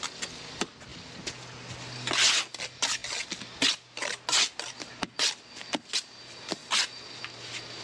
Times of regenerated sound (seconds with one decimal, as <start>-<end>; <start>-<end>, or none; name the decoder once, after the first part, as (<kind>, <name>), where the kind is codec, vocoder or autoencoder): none